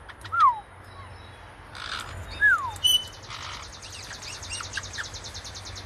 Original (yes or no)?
yes